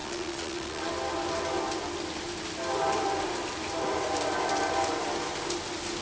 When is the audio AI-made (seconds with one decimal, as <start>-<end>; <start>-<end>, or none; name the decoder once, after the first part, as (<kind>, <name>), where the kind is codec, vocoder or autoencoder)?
0.0-0.9 (vocoder, Vocos)